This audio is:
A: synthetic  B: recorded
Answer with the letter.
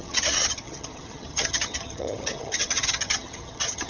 A